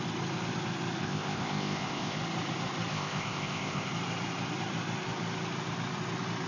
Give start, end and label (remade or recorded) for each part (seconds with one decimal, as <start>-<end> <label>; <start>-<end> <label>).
0.0-1.0 recorded; 1.0-2.2 remade; 2.2-2.9 recorded; 2.9-3.9 remade; 3.9-6.5 recorded